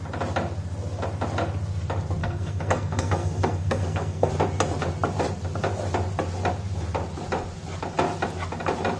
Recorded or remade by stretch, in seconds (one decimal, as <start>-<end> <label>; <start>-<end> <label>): 0.0-2.2 recorded; 2.2-4.3 remade; 4.3-9.0 recorded